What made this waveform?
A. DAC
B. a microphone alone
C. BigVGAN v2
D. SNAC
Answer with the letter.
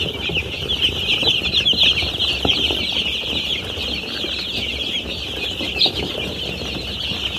B